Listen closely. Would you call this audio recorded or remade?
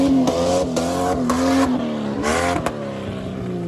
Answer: recorded